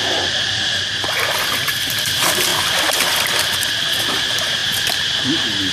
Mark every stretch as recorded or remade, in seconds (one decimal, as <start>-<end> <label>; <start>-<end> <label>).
0.0-2.5 remade; 2.5-4.0 recorded; 4.0-5.7 remade